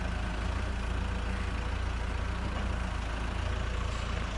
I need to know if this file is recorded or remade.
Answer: recorded